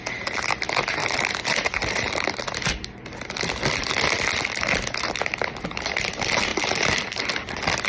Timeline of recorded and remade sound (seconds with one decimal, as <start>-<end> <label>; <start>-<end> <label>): 0.0-1.0 recorded; 1.0-1.9 remade; 1.9-6.5 recorded; 6.5-7.9 remade